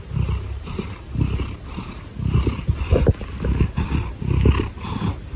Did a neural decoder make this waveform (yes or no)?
no